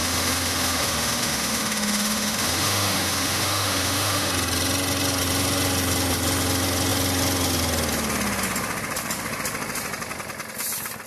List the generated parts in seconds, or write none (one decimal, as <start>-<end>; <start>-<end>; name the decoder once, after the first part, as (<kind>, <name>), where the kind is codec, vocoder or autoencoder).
0.0-4.3 (autoencoder, DAC-VAE)